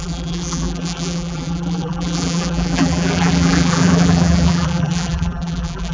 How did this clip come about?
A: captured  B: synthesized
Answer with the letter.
B